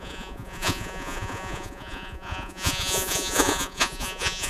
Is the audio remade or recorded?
remade